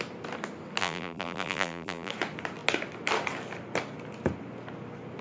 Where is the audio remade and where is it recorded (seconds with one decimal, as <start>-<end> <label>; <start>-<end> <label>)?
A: 0.0-0.8 recorded; 0.8-2.1 remade; 2.1-5.2 recorded